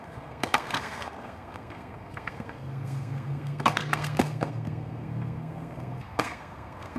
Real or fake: fake